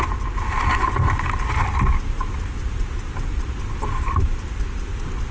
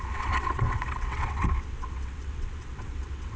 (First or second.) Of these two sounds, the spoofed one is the second